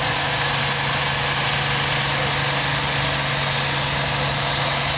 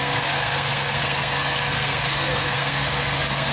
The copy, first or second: second